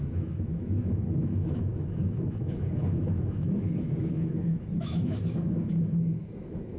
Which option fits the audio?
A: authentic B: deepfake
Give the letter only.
B